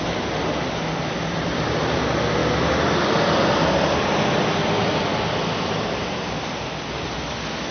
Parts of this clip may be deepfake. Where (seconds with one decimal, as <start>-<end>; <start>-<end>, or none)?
none